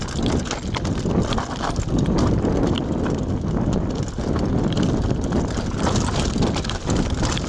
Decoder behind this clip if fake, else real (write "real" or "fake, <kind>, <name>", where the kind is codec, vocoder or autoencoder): real